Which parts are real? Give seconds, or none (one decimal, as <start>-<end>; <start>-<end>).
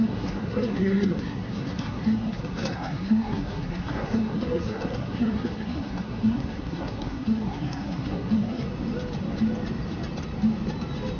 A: 8.7-11.2